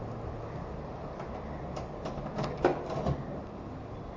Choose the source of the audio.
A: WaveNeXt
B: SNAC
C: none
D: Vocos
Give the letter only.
C